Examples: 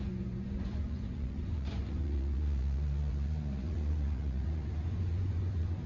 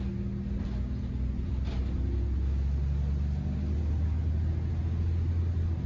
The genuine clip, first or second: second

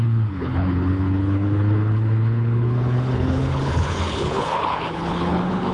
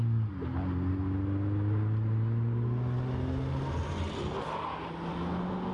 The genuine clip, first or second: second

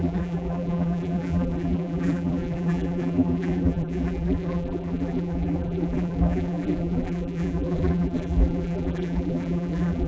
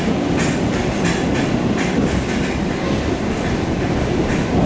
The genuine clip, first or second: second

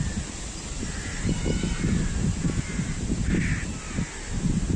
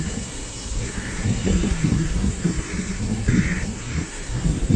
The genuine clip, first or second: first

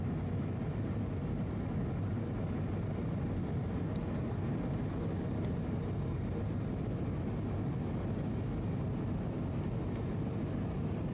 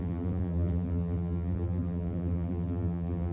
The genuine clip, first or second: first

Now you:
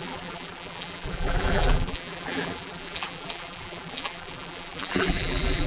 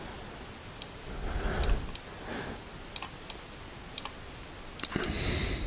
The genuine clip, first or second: second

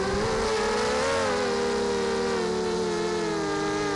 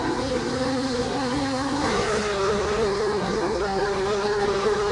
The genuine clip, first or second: first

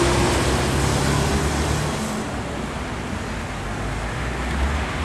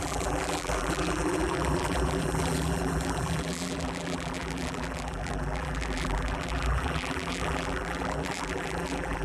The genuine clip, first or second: first